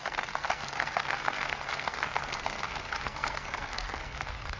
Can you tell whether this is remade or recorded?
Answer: remade